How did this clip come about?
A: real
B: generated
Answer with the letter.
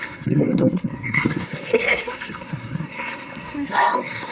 B